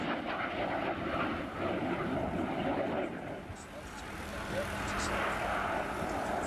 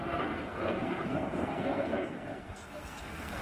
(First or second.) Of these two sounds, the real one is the first